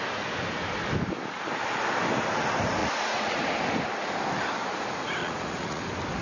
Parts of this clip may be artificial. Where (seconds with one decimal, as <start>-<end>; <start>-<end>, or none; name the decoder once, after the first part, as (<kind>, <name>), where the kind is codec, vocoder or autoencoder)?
2.8-3.4 (vocoder, Vocos); 5.2-5.8